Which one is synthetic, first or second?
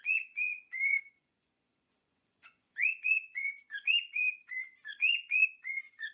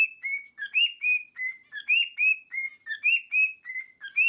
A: first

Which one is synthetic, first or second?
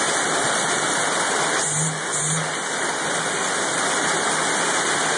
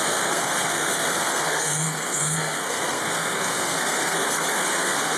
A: second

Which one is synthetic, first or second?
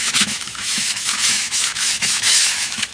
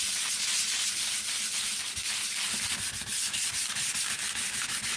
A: first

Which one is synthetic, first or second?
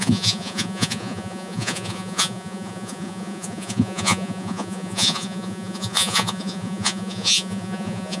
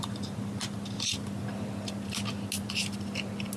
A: first